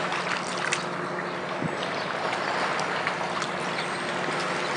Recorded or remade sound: recorded